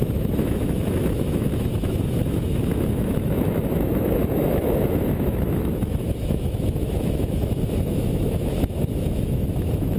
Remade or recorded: remade